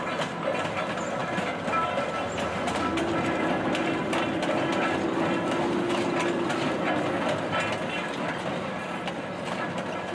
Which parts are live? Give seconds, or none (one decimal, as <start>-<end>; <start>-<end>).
0.0-10.1